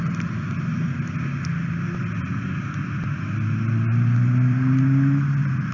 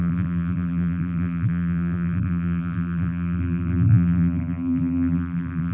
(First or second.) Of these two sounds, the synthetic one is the second